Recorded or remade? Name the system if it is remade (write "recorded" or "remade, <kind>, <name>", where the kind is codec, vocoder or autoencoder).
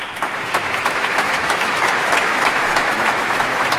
remade, autoencoder, DAC-VAE